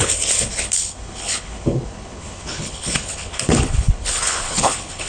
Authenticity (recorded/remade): remade